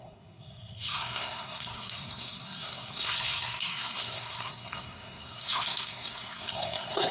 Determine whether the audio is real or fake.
fake